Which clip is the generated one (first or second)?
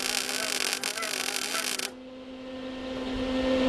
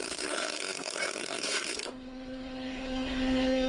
second